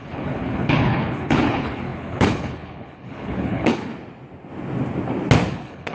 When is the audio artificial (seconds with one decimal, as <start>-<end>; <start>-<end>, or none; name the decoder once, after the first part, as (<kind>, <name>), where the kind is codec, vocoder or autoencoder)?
0.0-3.9 (codec, HILCodec); 5.5-5.9